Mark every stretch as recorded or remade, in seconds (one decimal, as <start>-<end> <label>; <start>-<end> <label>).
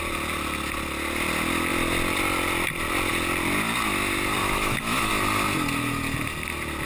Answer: 0.0-4.4 recorded; 4.4-5.1 remade; 5.1-6.9 recorded